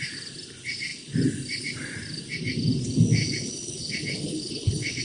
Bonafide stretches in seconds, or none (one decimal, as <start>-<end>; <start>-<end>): 0.0-3.2